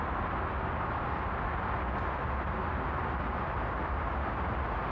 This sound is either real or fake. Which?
real